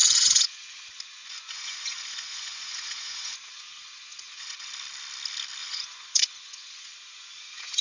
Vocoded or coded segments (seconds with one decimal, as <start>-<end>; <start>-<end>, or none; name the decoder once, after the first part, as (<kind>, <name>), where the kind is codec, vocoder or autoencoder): 0.0-4.7 (vocoder, Vocos); 5.6-7.8

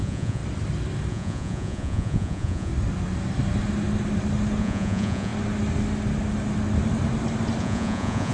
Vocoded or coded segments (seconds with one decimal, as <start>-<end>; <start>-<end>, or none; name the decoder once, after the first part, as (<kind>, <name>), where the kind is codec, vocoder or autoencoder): 0.0-0.4 (vocoder, Vocos); 1.1-2.7; 4.6-5.3; 7.6-8.3

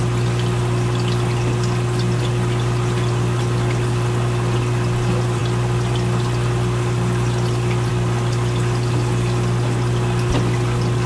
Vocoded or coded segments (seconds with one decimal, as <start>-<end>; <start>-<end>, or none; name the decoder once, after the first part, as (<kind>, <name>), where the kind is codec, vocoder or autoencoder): none